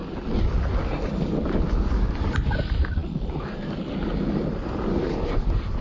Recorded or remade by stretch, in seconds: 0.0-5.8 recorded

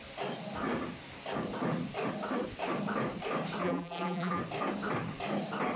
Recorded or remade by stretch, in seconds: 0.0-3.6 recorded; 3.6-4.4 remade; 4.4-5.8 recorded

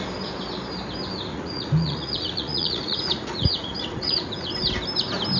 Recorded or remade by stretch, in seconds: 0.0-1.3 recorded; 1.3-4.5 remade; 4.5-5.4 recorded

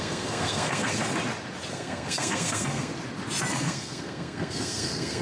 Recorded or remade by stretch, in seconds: 0.0-1.1 remade; 1.1-1.7 recorded; 1.7-2.9 remade; 2.9-3.5 recorded; 3.5-5.2 remade

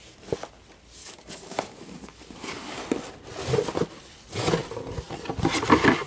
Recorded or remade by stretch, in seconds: 0.0-1.0 recorded; 1.0-2.8 remade; 2.8-6.1 recorded

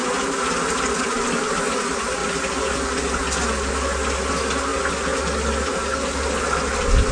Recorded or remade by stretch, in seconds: 0.0-7.1 recorded

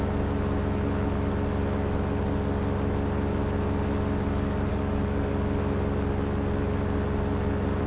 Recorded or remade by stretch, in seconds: 0.0-4.7 recorded; 4.7-5.3 remade; 5.3-7.9 recorded